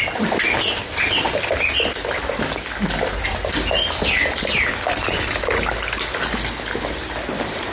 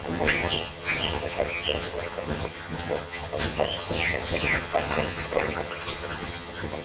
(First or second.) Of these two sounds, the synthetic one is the second